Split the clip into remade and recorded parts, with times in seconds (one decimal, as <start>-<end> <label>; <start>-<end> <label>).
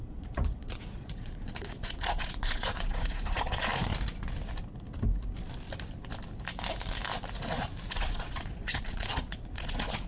0.0-3.7 remade; 3.7-7.9 recorded; 7.9-10.1 remade